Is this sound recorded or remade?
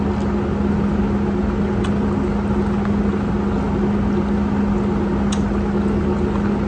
recorded